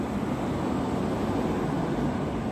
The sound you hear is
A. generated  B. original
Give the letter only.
B